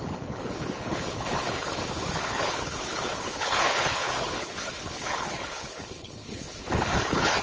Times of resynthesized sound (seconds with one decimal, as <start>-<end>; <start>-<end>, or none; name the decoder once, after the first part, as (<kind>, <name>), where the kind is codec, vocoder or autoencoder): 0.0-7.4 (codec, HILCodec)

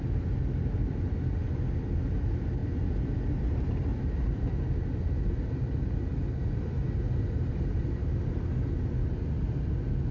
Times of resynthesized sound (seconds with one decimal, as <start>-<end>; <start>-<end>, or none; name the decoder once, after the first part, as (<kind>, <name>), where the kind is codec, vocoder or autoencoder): none